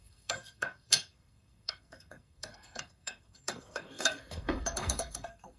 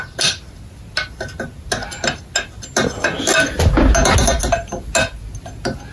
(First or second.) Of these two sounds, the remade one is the first